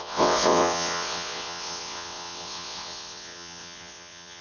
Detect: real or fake fake